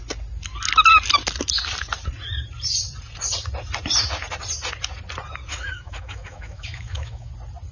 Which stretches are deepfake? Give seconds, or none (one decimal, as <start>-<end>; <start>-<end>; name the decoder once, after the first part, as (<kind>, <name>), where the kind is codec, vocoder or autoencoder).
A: 5.5-7.3 (autoencoder, DAC-VAE)